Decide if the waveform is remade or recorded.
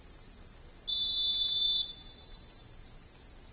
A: recorded